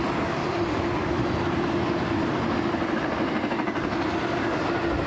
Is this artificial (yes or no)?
no